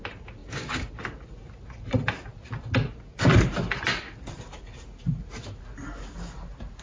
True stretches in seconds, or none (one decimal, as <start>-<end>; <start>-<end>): 0.0-0.4; 0.9-6.8